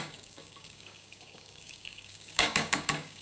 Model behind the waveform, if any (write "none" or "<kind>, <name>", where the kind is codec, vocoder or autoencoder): codec, DAC